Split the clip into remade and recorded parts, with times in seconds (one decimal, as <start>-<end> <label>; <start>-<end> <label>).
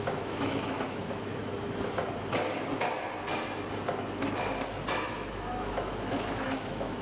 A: 0.0-1.5 remade; 1.5-5.1 recorded; 5.1-7.0 remade